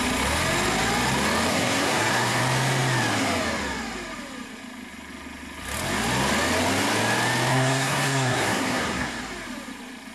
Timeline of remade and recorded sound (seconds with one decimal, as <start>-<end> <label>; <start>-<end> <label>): 0.0-1.5 recorded; 1.5-2.4 remade; 2.4-7.5 recorded; 7.5-9.2 remade; 9.2-10.1 recorded